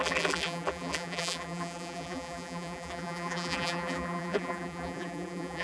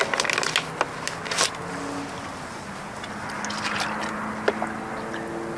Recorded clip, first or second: second